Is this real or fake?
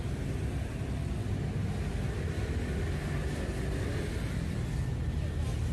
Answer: real